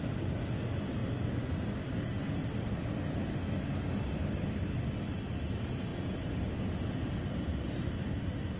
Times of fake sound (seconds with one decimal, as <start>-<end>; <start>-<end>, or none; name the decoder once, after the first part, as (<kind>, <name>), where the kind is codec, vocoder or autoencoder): none